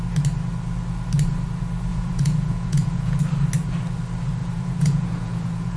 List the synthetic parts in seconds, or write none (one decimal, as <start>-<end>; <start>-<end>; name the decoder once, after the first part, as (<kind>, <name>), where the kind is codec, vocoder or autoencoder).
1.9-3.2 (vocoder, Vocos); 4.4-5.8